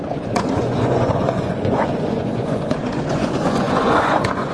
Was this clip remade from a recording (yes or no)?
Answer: yes